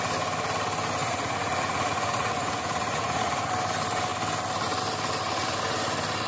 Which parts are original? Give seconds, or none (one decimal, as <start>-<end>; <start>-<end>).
0.0-1.0; 3.5-6.3